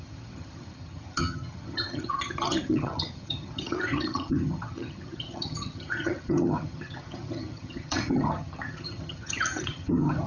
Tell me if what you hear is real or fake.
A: fake